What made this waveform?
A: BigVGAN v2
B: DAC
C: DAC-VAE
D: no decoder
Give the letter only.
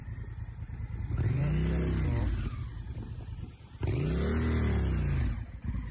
D